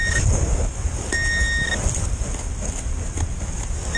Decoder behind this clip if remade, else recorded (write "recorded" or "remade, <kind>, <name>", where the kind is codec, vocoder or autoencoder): recorded